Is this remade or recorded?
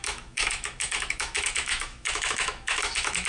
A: remade